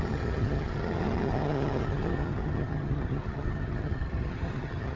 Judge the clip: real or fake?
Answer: fake